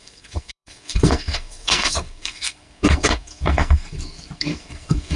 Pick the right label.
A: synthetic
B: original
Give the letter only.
A